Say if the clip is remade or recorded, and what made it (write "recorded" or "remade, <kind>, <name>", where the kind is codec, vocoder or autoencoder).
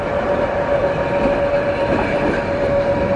remade, vocoder, BigVGAN v2